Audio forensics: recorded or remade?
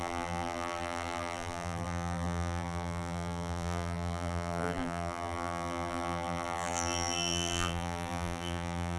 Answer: remade